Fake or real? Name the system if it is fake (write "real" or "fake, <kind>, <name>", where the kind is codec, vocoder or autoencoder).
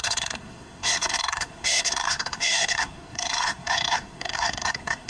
fake, codec, SNAC